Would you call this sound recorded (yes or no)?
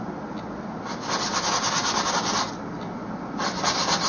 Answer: yes